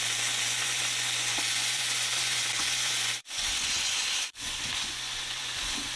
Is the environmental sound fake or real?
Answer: fake